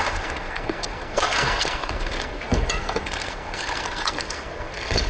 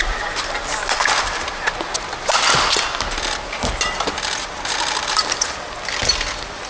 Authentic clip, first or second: second